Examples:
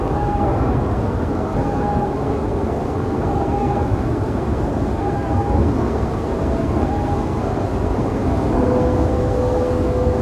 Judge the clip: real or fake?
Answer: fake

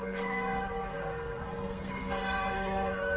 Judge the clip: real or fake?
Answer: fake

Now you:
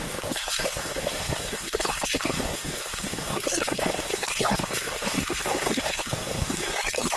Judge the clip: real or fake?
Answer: fake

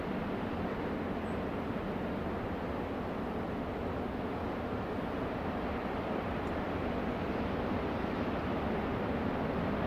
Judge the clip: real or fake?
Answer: real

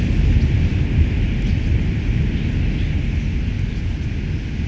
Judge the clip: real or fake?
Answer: real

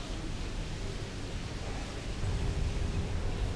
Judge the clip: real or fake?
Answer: real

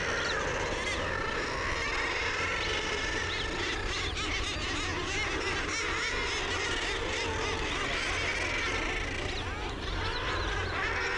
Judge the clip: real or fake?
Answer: real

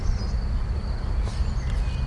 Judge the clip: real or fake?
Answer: real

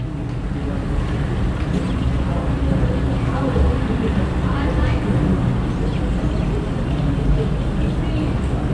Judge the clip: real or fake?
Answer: real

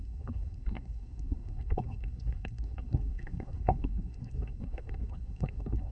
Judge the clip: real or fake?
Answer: fake